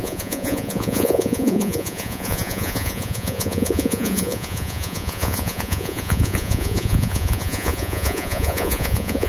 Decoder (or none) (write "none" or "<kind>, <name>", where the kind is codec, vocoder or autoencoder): vocoder, Vocos